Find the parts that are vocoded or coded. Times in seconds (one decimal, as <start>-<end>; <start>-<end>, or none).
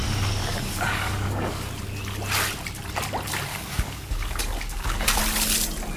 0.4-1.7; 3.5-5.2